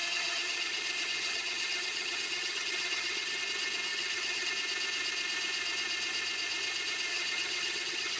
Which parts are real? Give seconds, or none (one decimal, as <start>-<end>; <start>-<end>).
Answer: 3.4-3.9; 4.5-7.1